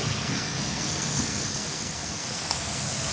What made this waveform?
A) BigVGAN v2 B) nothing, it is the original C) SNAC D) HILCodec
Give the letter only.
C